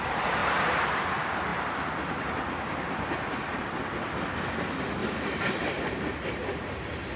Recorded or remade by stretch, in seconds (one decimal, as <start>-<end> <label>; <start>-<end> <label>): 0.0-0.4 recorded; 0.4-1.0 remade; 1.0-5.0 recorded; 5.0-5.8 remade; 5.8-7.2 recorded